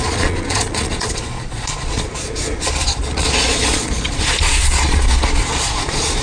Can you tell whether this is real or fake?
fake